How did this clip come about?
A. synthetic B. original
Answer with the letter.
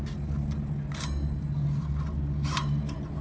B